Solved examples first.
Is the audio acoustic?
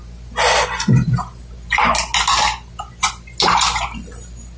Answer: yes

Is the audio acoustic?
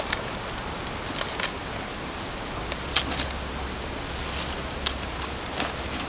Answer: yes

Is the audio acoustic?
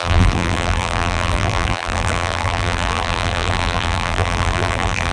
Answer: no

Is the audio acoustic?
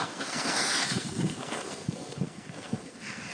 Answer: no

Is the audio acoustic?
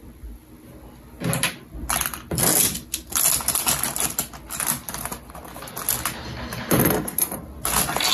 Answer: yes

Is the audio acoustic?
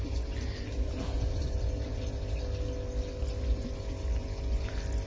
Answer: yes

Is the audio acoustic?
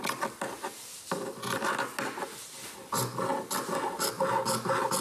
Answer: yes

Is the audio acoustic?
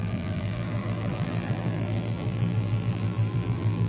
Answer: no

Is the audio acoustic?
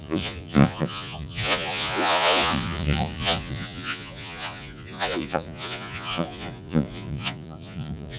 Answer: no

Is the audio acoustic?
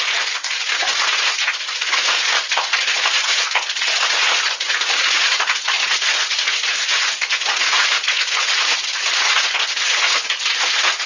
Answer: no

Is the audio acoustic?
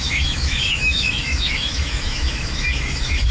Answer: no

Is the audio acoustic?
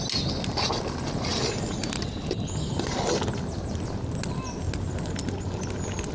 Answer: yes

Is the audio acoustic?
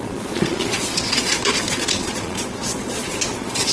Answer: no